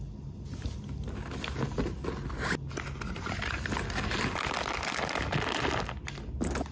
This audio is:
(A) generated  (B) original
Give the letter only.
B